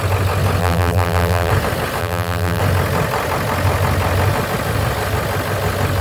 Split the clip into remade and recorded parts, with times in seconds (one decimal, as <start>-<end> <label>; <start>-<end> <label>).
0.0-0.6 recorded; 0.6-1.5 remade; 1.5-2.0 recorded; 2.0-2.6 remade; 2.6-6.0 recorded